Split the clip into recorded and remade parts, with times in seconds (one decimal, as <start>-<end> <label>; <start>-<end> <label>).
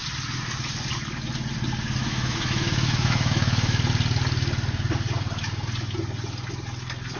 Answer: 0.0-2.0 recorded; 2.0-3.8 remade; 3.8-7.2 recorded